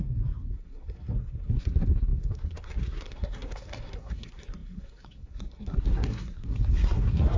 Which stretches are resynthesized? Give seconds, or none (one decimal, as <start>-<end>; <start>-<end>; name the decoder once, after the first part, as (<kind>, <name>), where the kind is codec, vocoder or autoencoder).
0.0-7.4 (codec, SNAC)